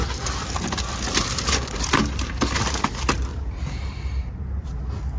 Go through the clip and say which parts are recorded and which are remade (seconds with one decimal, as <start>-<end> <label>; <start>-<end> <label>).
0.0-3.3 recorded; 3.3-4.7 remade; 4.7-5.2 recorded